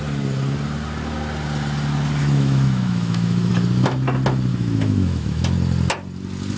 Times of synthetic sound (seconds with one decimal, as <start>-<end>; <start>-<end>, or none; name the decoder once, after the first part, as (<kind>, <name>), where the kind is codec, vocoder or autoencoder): 2.2-3.5 (autoencoder, DAC-VAE); 4.5-5.4